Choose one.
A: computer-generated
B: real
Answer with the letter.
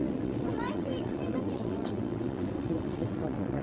A